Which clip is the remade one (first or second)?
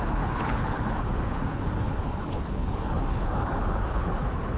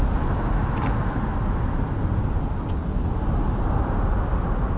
first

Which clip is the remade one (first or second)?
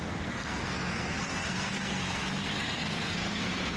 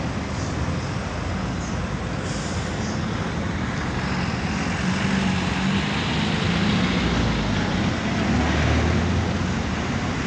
first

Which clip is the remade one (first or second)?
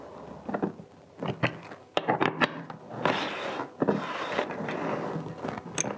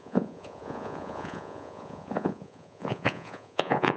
second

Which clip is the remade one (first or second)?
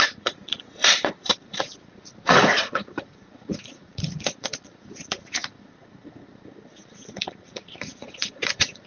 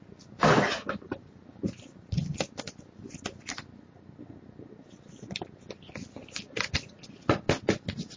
first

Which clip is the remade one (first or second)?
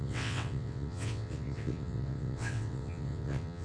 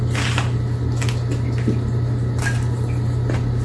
first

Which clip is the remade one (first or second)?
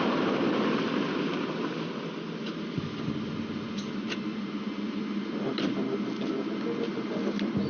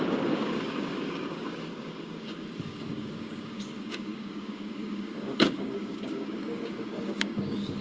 second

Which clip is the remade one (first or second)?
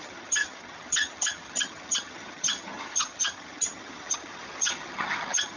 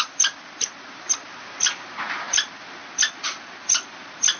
first